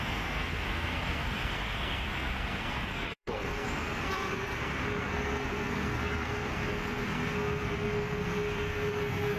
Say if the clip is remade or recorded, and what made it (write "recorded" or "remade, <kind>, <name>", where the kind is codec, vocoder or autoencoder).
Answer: remade, codec, SNAC